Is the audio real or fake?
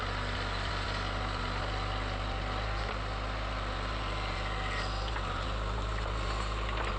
real